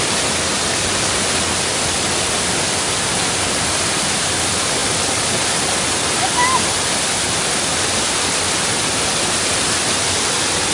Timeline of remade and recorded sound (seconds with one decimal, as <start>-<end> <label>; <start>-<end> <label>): 0.0-10.7 recorded